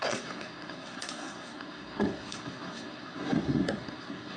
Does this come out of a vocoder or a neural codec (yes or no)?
yes